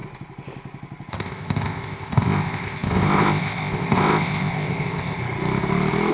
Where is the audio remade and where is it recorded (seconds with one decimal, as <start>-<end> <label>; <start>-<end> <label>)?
0.0-1.1 recorded; 1.1-5.2 remade; 5.2-6.1 recorded